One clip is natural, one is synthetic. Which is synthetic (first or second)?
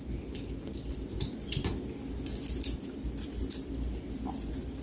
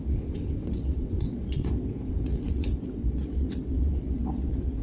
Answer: second